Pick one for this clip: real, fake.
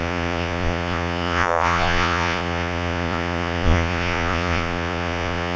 fake